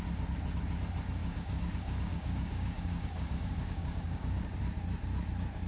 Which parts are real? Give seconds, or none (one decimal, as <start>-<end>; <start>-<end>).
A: 0.0-1.2; 4.6-5.7

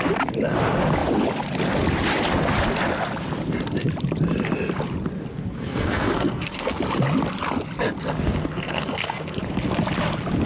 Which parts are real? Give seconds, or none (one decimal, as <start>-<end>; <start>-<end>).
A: 0.0-5.3; 6.8-8.4; 9.4-10.5

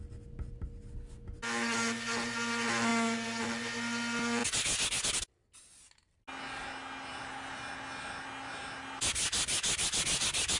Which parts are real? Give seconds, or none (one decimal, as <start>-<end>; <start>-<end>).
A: 0.0-7.1; 7.7-10.6

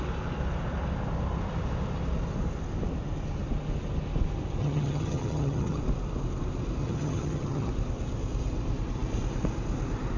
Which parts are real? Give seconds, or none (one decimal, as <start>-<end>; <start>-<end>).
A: 0.0-4.6; 5.8-6.8; 7.7-10.2

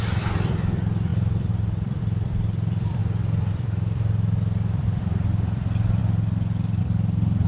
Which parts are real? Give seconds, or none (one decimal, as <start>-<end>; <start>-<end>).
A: 3.0-3.5; 6.0-6.8

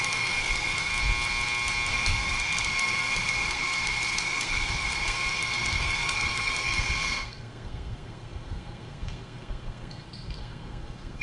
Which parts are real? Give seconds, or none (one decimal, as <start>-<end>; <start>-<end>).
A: 0.9-1.9

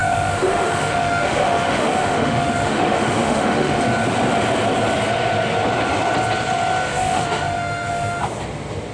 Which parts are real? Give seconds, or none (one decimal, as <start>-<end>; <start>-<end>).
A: 3.8-6.9; 8.2-8.9

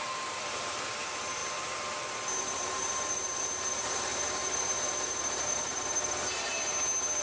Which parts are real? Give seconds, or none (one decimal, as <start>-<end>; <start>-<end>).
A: 1.4-2.4; 6.5-7.2